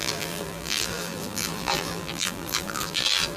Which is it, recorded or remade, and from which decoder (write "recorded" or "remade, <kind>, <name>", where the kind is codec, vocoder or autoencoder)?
remade, vocoder, BigVGAN v2